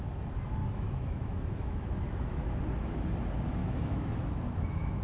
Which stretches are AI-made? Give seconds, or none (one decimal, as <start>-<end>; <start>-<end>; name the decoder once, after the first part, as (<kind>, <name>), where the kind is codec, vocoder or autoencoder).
0.6-2.5 (autoencoder, DAC-VAE); 3.6-5.0

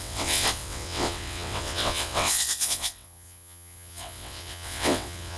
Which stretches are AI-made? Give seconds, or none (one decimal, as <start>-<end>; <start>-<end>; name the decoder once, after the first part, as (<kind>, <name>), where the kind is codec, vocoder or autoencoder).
0.0-5.4 (vocoder, WaveNeXt)

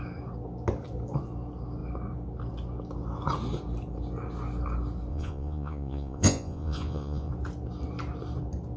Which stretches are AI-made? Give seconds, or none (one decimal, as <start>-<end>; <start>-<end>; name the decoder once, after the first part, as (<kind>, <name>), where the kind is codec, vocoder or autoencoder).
5.1-7.3 (vocoder, Vocos)

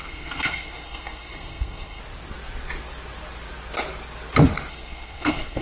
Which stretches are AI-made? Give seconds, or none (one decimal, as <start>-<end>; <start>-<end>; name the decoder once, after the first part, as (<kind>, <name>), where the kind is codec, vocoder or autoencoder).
0.0-2.0 (codec, SNAC); 4.7-5.6

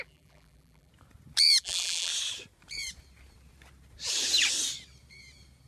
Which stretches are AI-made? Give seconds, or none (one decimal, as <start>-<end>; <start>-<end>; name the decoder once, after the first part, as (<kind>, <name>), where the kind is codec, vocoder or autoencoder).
0.0-0.9 (vocoder, BigVGAN v2); 1.6-2.1

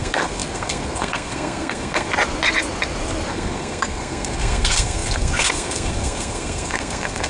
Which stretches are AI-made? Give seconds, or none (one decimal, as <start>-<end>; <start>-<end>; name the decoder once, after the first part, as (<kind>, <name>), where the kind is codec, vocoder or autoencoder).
0.0-2.1 (codec, SNAC); 3.3-7.3

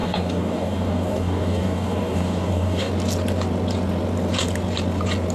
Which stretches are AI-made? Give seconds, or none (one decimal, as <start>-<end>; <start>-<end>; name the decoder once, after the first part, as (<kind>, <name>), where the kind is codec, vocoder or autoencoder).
0.0-2.9 (codec, DAC)

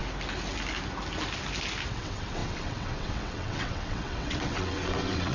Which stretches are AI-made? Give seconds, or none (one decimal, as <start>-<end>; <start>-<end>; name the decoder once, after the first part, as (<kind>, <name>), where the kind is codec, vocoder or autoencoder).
1.9-5.3 (vocoder, WaveNeXt)